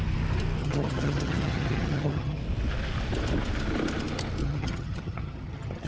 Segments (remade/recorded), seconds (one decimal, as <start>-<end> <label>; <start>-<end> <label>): 0.0-0.6 recorded; 0.6-2.4 remade; 2.4-4.4 recorded; 4.4-5.9 remade